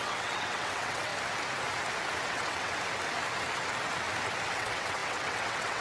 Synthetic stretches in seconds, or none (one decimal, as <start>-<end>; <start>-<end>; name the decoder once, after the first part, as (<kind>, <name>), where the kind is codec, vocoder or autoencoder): 0.0-1.1 (vocoder, WaveNeXt); 2.2-2.7; 4.5-5.8